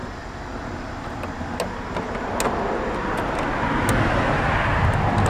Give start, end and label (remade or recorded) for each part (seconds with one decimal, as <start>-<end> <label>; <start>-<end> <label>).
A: 0.0-5.3 recorded